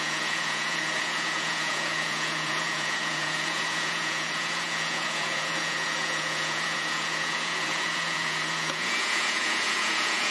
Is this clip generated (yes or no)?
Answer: yes